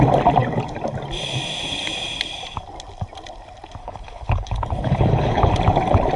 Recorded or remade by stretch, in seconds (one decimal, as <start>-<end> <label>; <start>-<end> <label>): 0.0-3.8 recorded; 3.8-5.5 remade; 5.5-6.2 recorded